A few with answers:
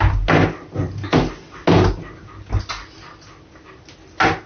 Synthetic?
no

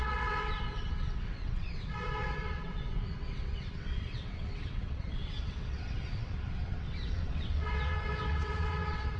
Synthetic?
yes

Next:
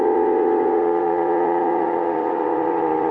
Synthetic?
yes